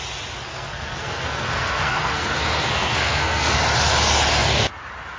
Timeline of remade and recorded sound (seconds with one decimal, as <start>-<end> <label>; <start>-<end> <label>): 0.0-0.5 recorded; 0.5-3.6 remade; 3.6-5.2 recorded